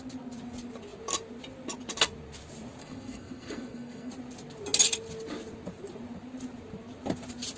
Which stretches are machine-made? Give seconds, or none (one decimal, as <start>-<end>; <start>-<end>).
2.8-4.1

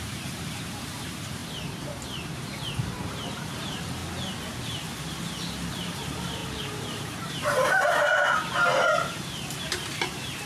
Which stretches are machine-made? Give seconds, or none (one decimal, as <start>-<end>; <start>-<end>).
0.0-4.0; 5.7-10.5

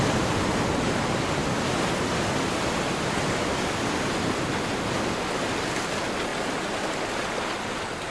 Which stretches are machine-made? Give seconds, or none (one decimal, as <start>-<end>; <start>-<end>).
none

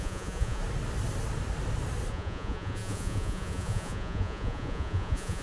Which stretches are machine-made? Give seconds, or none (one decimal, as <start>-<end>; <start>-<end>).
0.0-0.6; 2.1-5.4

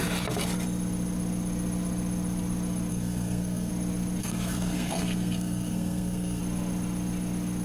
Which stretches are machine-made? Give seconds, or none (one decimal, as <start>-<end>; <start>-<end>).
2.9-3.7; 4.2-6.4

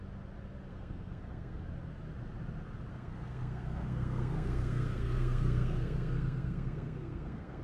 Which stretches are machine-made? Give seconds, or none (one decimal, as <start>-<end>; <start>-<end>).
0.7-1.6; 2.9-7.6